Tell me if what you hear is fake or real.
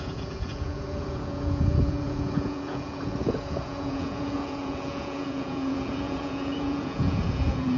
fake